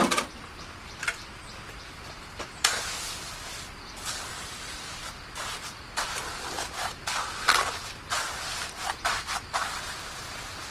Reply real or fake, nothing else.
real